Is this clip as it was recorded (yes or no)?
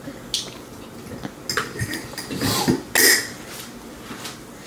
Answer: yes